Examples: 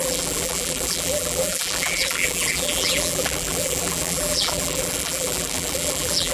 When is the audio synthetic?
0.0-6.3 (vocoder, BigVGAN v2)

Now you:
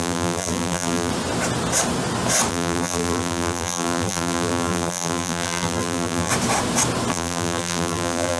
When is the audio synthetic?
0.0-1.1 (vocoder, BigVGAN v2); 2.5-6.3; 7.1-8.4

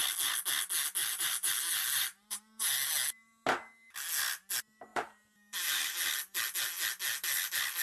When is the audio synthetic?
1.0-2.9 (vocoder, BigVGAN v2); 4.9-6.1

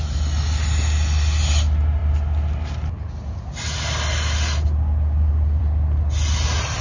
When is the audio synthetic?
none